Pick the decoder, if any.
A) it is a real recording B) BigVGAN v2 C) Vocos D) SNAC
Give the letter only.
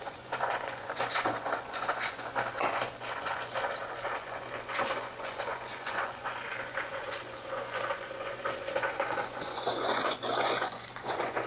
C